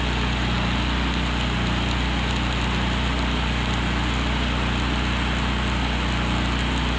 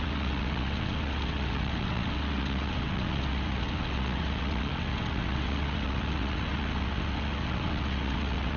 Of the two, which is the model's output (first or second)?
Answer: second